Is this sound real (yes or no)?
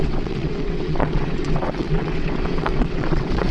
no